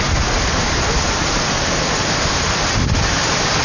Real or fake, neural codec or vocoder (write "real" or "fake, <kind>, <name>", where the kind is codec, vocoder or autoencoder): real